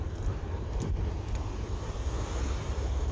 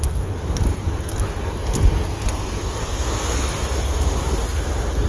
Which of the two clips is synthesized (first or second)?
first